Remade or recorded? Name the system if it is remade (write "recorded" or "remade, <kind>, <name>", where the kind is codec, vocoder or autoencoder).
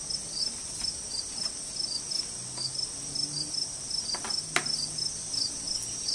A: recorded